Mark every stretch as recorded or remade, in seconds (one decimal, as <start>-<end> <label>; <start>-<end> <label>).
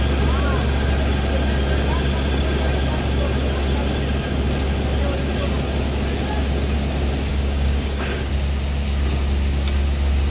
0.0-7.3 recorded; 7.3-8.3 remade; 8.3-10.3 recorded